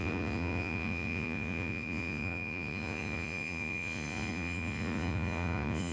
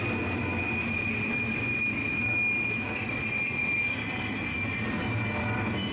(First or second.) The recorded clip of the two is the second